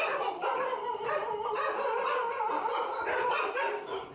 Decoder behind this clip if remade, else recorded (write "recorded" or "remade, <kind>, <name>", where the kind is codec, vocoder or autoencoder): recorded